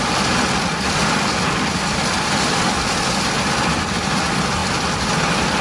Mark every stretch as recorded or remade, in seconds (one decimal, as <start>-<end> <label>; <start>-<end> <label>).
0.0-5.6 recorded